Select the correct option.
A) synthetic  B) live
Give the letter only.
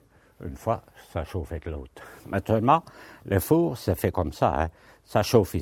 B